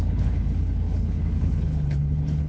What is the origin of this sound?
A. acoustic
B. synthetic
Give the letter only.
B